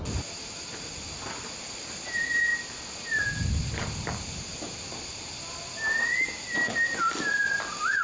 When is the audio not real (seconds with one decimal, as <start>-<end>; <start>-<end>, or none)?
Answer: none